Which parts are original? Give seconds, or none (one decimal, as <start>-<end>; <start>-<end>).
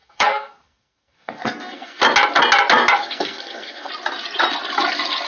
2.0-3.0; 3.9-5.3